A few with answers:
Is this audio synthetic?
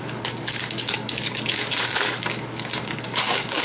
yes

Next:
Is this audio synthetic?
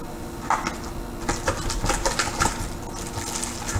no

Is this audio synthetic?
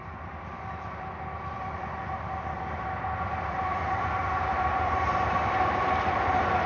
yes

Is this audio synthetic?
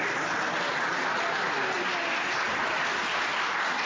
no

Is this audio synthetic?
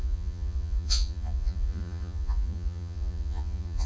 yes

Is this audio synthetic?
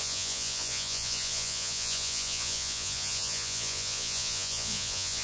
yes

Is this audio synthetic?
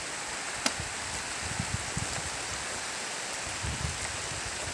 no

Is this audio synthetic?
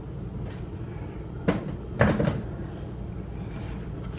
no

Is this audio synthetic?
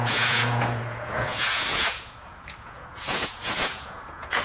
yes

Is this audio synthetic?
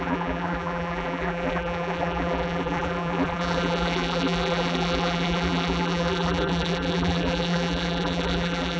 yes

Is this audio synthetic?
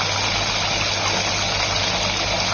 no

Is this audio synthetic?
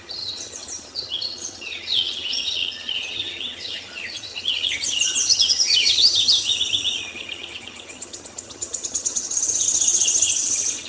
yes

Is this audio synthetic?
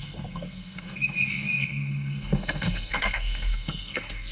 yes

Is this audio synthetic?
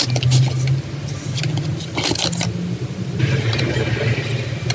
no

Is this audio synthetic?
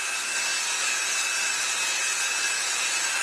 no